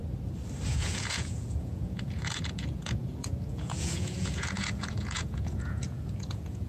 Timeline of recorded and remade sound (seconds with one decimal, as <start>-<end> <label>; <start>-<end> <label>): 0.0-0.7 recorded; 0.7-6.7 remade